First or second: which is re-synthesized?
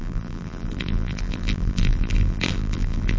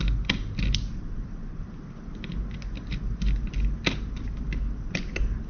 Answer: first